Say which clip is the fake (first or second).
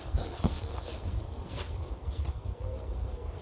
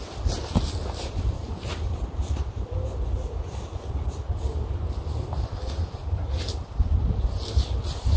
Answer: first